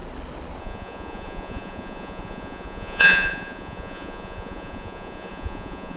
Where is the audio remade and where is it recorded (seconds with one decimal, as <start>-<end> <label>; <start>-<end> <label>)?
0.0-0.6 recorded; 0.6-6.0 remade